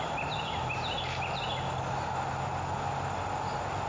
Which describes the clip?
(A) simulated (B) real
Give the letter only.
B